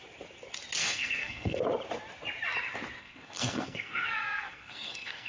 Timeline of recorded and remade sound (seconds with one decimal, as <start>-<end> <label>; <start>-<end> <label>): 0.0-0.8 recorded; 0.8-1.6 remade; 1.6-3.0 recorded; 3.0-5.3 remade